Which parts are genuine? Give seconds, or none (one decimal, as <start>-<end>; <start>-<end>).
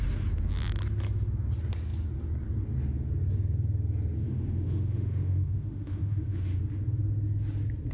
0.0-4.2; 6.6-7.9